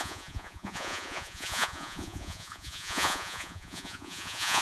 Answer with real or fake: fake